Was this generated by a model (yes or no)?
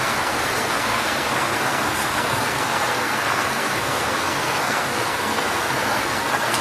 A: yes